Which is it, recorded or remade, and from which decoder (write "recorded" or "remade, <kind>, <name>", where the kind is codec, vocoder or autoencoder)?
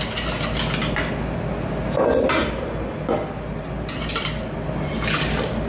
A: recorded